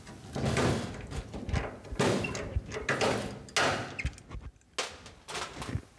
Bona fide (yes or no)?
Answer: yes